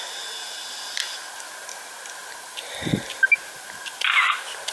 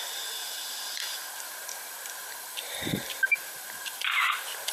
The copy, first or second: second